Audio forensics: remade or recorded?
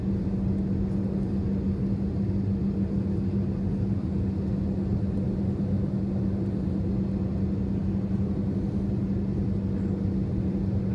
recorded